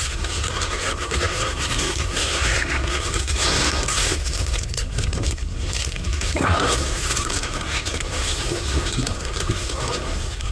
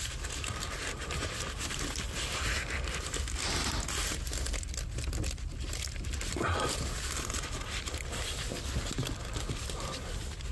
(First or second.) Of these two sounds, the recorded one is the second